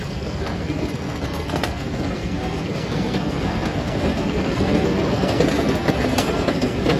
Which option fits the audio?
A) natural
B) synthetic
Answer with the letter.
B